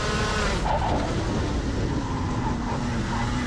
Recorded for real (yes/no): yes